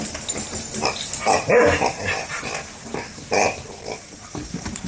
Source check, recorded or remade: remade